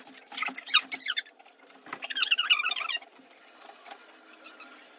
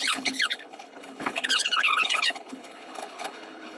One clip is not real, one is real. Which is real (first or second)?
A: first